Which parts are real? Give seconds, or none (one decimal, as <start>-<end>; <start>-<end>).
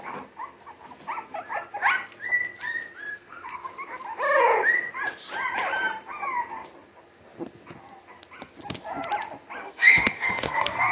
0.0-3.1; 3.7-9.6